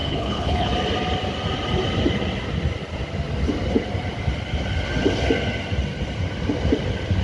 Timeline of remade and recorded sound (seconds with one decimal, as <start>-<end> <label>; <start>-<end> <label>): 0.0-0.7 remade; 0.7-7.2 recorded